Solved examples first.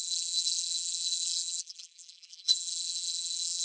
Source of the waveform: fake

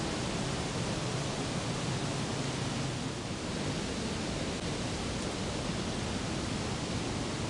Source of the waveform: real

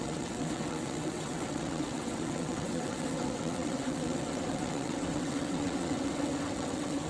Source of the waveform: fake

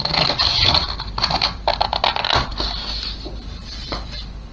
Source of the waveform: real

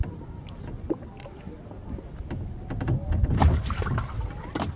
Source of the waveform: real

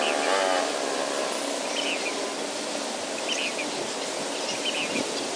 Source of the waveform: real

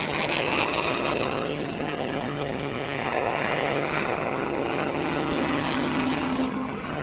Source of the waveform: fake